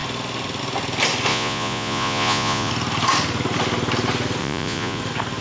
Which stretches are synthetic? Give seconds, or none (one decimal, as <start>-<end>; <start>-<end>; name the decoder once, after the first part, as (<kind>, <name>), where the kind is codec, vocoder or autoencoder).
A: 1.3-2.7 (vocoder, Vocos); 4.4-5.0